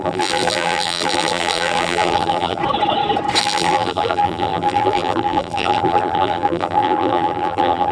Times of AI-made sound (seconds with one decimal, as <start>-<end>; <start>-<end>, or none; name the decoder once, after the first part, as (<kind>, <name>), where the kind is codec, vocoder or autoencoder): 0.0-2.6 (vocoder, BigVGAN v2); 3.4-7.9